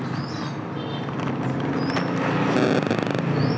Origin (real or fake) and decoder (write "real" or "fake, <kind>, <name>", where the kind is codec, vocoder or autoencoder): real